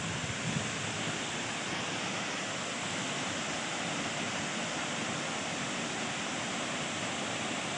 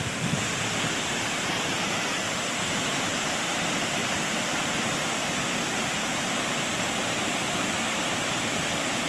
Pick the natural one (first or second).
first